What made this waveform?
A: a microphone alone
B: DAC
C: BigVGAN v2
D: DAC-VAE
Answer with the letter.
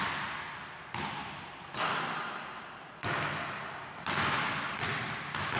A